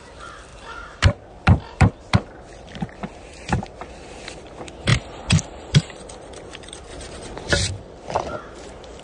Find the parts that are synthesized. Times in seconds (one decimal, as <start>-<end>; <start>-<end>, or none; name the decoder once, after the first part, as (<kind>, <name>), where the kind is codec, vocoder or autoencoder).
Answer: 0.0-4.9 (vocoder, BigVGAN v2); 5.4-6.9; 7.5-9.0